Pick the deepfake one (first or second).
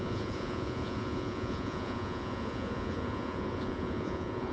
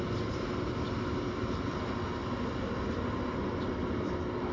first